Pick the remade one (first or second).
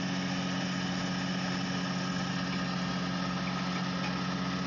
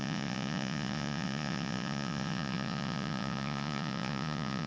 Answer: second